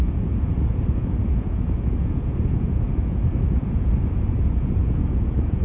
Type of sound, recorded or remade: remade